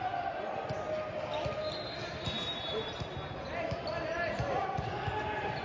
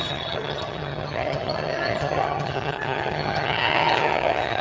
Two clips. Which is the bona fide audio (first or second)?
first